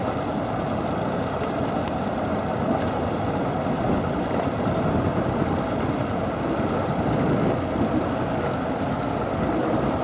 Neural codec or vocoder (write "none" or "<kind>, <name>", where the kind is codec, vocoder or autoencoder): none